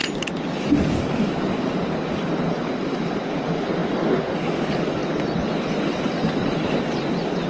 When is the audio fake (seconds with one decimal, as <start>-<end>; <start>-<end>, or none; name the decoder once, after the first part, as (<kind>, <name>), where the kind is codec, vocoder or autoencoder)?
0.0-2.4 (vocoder, BigVGAN v2)